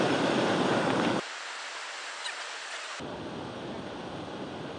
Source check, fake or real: real